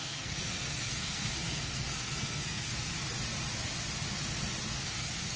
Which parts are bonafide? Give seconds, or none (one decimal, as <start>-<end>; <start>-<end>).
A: 2.9-4.8